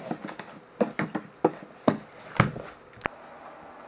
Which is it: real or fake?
real